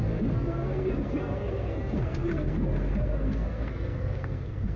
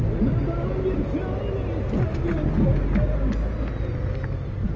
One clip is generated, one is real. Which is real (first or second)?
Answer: second